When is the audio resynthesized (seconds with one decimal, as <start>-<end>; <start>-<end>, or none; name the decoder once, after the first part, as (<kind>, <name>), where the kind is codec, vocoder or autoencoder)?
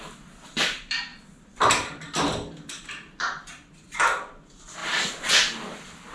1.1-2.0 (vocoder, BigVGAN v2); 4.8-5.3